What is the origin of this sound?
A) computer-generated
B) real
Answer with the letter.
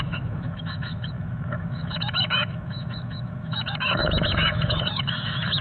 A